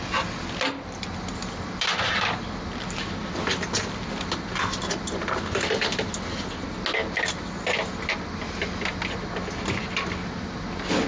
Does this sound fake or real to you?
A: real